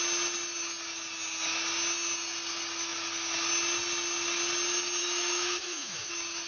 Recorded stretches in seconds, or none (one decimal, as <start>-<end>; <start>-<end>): 0.0-5.0; 6.1-6.5